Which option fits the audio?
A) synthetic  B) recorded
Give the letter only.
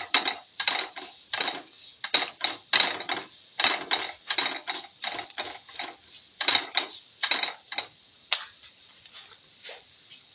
B